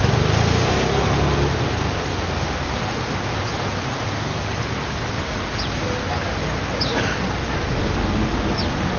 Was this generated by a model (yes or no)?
no